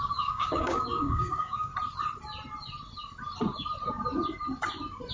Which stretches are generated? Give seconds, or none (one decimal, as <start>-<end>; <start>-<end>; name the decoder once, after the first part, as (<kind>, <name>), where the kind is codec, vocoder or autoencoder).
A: 0.0-1.7 (codec, DAC)